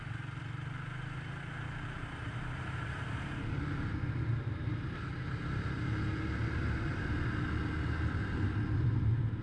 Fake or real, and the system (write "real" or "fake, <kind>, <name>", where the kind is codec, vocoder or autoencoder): real